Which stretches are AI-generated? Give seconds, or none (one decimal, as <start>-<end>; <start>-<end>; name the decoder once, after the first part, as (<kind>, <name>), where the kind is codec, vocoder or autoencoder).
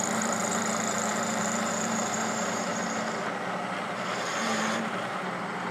0.0-2.7 (vocoder, BigVGAN v2); 4.4-5.7